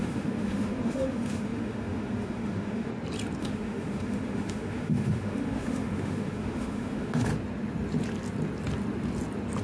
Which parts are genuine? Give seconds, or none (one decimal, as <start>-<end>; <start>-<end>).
2.9-3.4; 7.3-9.6